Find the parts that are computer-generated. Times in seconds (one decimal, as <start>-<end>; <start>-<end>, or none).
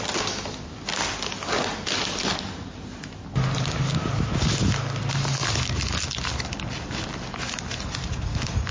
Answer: none